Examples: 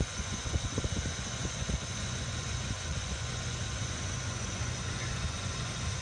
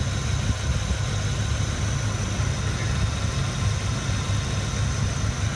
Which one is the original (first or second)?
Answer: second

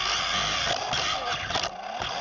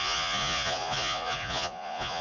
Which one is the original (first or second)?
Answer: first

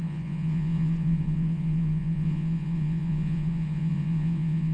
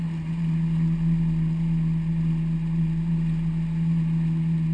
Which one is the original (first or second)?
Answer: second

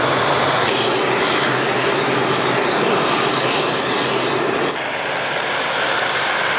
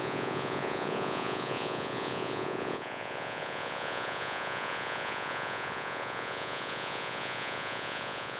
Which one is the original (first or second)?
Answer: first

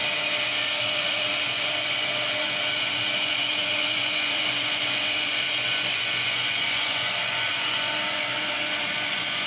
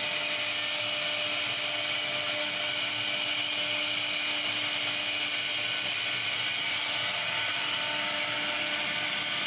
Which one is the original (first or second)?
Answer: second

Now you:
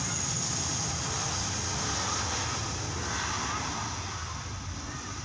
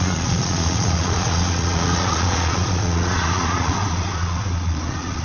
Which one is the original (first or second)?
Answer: first